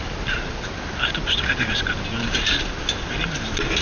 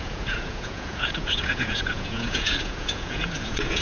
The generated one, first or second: second